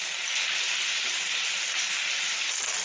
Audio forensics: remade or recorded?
recorded